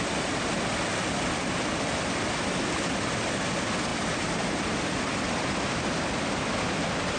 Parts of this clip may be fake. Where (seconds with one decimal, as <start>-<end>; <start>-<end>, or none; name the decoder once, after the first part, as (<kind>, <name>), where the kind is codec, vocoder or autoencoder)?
3.9-6.6 (vocoder, BigVGAN v2)

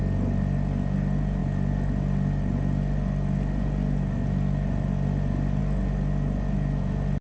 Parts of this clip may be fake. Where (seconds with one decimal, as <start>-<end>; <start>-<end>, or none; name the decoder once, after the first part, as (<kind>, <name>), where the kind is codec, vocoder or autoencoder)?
none

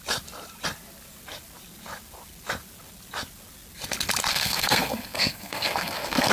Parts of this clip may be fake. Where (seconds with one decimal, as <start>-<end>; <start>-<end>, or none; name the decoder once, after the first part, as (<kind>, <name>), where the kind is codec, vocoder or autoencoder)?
4.3-6.3 (codec, SNAC)

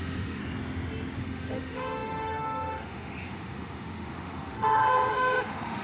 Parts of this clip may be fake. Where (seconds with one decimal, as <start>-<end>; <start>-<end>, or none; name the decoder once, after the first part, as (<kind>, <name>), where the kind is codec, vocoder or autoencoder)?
0.0-0.4 (autoencoder, DAC-VAE); 1.2-5.8

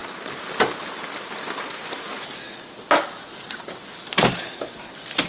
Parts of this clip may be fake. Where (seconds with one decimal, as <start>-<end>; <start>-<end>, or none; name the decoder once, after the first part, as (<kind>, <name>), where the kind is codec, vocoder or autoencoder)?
none

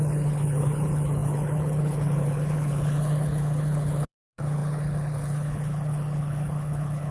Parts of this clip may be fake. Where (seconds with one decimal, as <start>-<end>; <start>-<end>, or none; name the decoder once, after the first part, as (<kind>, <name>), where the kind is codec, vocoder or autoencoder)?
0.0-7.1 (codec, HILCodec)

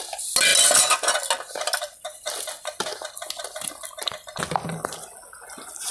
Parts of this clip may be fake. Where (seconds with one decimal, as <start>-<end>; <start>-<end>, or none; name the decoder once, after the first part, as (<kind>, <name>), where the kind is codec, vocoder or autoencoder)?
none